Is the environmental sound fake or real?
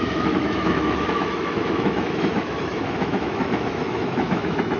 fake